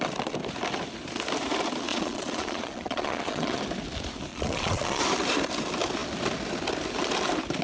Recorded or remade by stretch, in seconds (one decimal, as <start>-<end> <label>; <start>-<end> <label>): 0.0-1.9 recorded; 1.9-3.6 remade; 3.6-4.3 recorded; 4.3-5.0 remade; 5.0-7.6 recorded